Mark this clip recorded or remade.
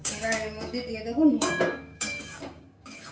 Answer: remade